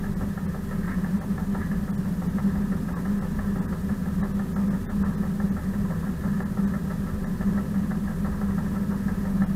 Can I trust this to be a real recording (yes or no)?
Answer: yes